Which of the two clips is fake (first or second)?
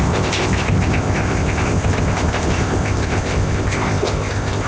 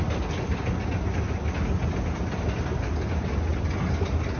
first